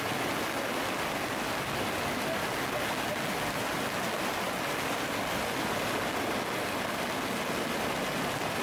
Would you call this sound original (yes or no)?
yes